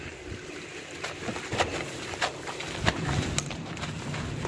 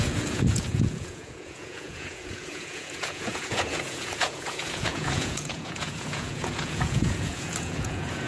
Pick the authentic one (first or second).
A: first